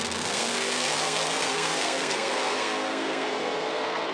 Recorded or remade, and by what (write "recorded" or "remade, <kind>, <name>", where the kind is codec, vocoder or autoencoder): remade, codec, SNAC